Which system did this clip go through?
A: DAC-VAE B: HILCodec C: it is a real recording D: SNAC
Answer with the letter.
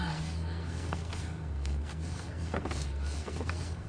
D